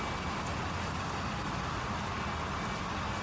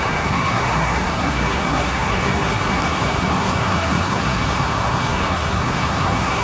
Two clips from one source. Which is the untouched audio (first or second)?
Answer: first